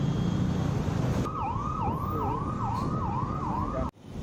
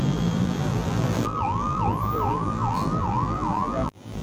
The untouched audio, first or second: first